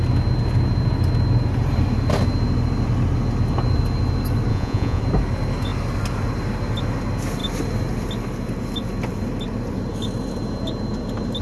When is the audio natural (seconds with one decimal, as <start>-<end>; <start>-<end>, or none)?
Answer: 0.0-4.5; 5.0-11.4